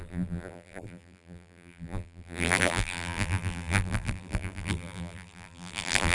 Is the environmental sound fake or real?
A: fake